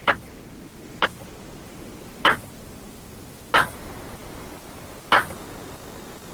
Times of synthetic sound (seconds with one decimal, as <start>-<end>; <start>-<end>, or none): none